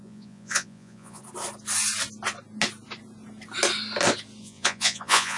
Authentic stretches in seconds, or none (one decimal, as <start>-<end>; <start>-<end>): 1.2-4.4